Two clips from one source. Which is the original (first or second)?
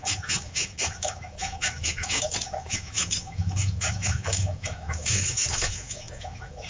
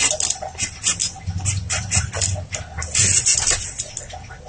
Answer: second